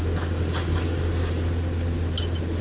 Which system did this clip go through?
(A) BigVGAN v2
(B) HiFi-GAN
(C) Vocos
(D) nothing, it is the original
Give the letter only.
D